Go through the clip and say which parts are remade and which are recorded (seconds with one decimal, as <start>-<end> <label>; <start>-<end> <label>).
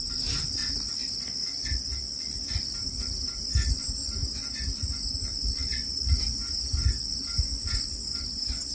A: 0.0-8.7 recorded